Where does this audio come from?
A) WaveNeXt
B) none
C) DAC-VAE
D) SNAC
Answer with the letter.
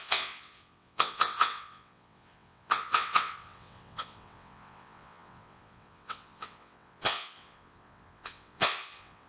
A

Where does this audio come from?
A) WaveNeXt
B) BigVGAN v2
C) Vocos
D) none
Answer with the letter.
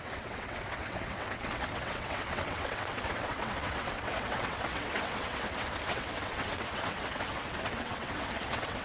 A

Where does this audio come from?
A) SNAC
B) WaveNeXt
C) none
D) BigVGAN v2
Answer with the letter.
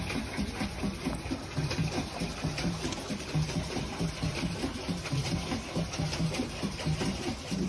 C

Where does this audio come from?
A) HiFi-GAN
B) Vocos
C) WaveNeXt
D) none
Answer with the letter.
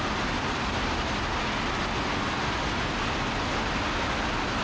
D